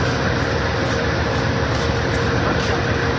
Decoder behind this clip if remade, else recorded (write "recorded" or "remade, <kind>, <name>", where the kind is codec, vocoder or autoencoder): recorded